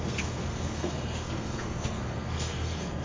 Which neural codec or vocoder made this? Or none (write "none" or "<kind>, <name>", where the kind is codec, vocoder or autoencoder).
codec, SNAC